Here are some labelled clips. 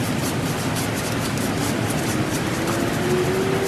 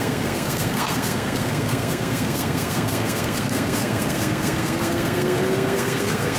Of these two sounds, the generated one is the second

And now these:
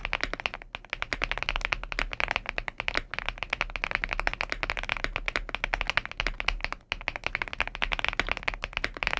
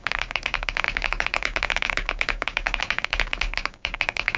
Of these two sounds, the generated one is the second